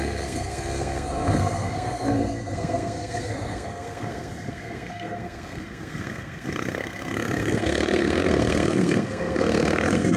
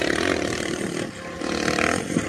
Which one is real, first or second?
second